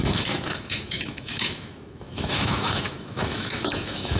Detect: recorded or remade remade